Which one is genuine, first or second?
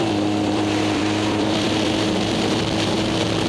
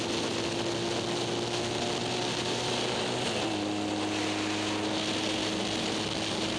second